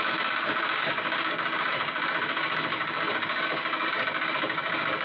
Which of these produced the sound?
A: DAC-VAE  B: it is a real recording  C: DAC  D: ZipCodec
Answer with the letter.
C